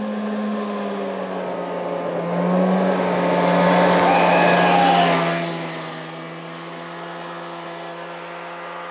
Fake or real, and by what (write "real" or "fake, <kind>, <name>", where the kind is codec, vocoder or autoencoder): real